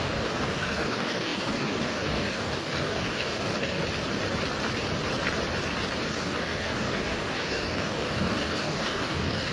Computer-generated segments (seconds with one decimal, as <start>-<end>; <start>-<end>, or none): 0.0-3.8; 6.0-9.5